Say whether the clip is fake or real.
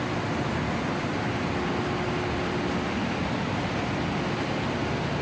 real